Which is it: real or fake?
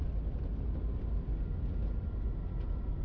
real